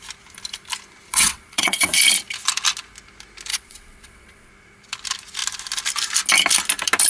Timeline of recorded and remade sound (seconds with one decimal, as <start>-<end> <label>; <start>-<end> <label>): 0.0-1.1 recorded; 1.1-2.0 remade; 2.0-3.5 recorded; 3.5-4.5 remade; 4.5-7.1 recorded